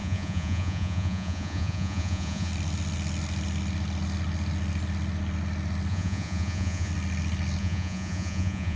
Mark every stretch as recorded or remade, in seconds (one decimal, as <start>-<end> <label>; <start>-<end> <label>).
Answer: 0.0-2.5 remade; 2.5-5.9 recorded; 5.9-6.9 remade; 6.9-7.6 recorded; 7.6-8.8 remade